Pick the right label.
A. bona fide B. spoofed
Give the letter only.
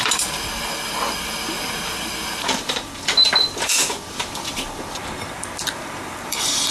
B